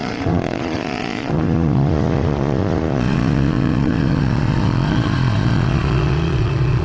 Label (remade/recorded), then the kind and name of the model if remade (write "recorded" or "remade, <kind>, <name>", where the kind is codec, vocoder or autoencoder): remade, vocoder, Vocos